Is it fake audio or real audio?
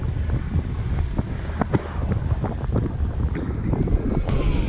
real